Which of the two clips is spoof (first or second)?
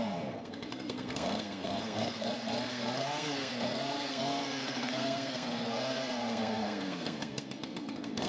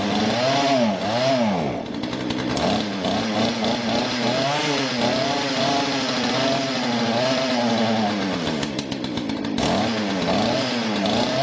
first